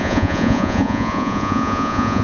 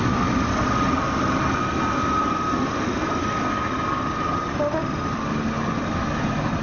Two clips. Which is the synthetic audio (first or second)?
first